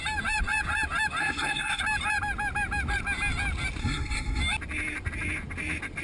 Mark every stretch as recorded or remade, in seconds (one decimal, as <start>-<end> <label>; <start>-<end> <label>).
0.0-1.2 recorded; 1.2-1.8 remade; 1.8-3.8 recorded; 3.8-4.4 remade; 4.4-6.0 recorded